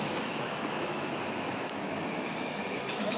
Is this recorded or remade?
remade